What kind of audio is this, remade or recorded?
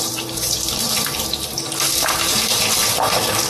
remade